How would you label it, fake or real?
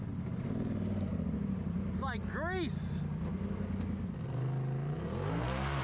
real